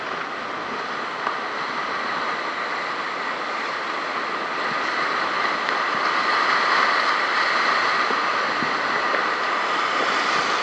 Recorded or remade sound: recorded